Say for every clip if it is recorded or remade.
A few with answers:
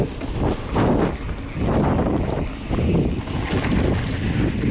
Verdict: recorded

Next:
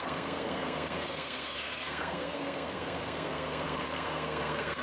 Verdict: remade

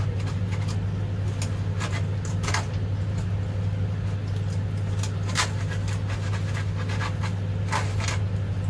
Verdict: recorded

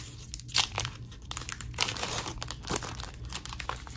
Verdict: remade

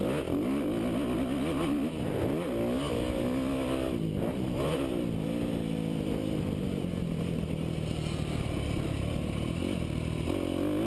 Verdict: recorded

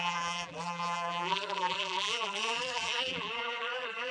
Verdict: remade